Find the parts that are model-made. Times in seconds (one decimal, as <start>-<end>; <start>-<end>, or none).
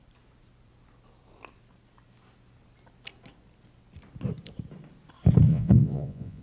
5.5-6.4